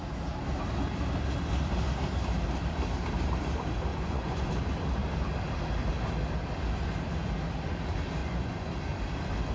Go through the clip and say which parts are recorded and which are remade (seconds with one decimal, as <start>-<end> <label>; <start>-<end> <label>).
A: 0.0-3.9 recorded; 3.9-4.5 remade; 4.5-8.2 recorded; 8.2-8.7 remade; 8.7-9.5 recorded